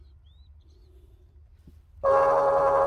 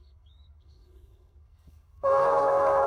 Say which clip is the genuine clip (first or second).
first